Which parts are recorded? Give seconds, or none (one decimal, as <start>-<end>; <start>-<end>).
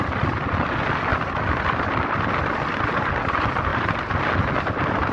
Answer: 0.0-5.1